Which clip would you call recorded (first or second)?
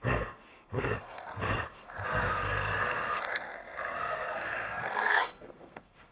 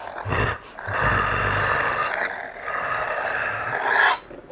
second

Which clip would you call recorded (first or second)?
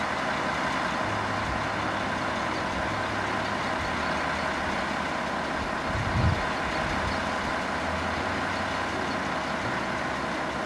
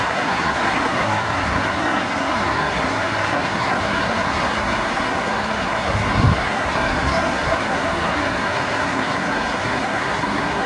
first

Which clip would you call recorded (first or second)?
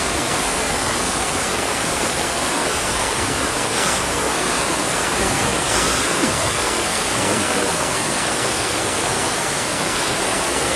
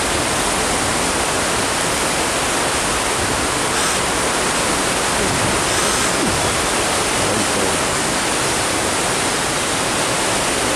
second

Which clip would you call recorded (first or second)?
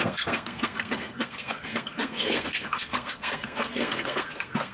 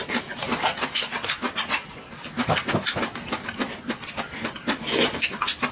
second